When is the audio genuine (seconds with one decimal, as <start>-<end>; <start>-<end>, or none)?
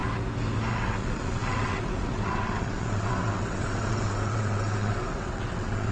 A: 0.0-0.7